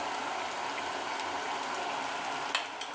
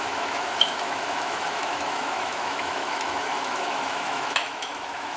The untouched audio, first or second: first